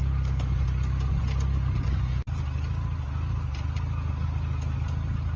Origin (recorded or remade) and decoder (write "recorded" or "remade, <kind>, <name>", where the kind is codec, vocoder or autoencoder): recorded